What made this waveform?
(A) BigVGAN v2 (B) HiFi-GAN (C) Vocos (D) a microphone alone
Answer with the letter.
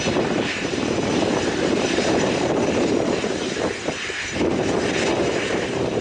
A